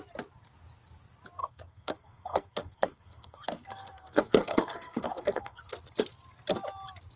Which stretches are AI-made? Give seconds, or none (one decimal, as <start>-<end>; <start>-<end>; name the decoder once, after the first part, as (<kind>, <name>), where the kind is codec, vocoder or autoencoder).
1.4-5.7 (codec, SNAC)